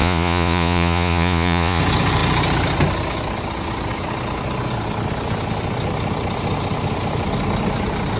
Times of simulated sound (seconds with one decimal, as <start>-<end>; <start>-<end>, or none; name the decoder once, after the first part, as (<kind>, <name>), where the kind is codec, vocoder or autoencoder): 0.0-1.8 (vocoder, Vocos)